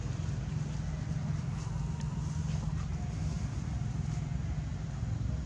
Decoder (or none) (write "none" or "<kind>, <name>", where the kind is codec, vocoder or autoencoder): none